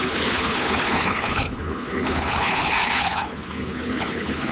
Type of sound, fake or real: fake